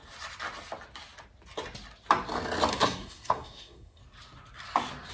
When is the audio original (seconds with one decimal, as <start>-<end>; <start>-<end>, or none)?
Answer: 0.0-2.7; 4.0-5.1